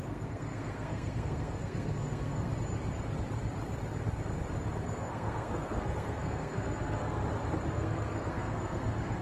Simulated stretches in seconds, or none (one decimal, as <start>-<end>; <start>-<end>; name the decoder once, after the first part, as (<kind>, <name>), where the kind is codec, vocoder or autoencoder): 0.0-2.5 (codec, SNAC); 4.8-7.2; 7.7-9.2